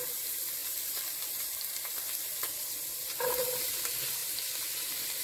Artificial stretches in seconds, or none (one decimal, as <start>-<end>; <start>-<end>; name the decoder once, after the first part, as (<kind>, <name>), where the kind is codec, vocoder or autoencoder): 0.0-4.2 (vocoder, BigVGAN v2); 4.8-5.2